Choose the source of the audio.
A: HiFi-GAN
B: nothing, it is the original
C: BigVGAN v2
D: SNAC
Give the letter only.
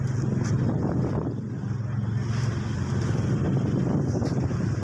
B